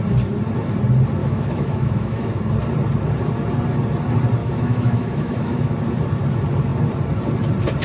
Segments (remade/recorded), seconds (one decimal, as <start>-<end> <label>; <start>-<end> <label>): 0.0-1.2 recorded; 1.2-2.4 remade; 2.4-4.4 recorded; 4.4-5.7 remade; 5.7-7.8 recorded

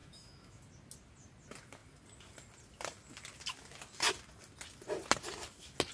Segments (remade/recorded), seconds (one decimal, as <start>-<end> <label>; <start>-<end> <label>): 0.0-0.6 remade; 0.6-5.9 recorded

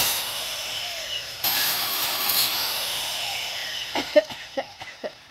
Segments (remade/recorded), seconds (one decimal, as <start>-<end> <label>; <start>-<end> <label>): 0.0-5.3 remade

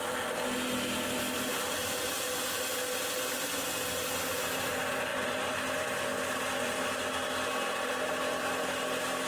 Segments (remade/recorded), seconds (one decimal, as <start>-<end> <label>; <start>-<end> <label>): 0.0-9.3 recorded